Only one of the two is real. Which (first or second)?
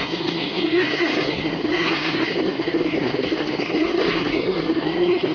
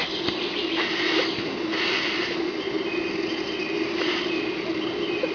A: second